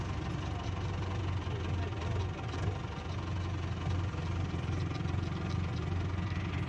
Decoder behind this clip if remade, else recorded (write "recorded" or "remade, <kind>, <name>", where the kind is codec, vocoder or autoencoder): recorded